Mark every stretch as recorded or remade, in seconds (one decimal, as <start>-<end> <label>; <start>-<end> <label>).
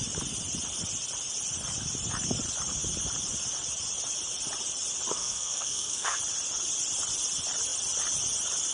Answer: 0.0-5.2 recorded; 5.2-6.2 remade; 6.2-8.7 recorded